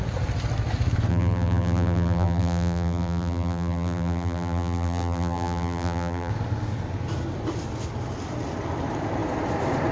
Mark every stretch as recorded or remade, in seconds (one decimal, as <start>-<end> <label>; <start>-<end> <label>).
0.0-1.1 recorded; 1.1-6.3 remade; 6.3-9.9 recorded